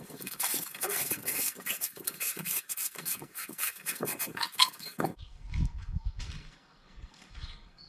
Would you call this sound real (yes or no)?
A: no